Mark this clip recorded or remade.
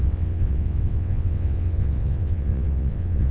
remade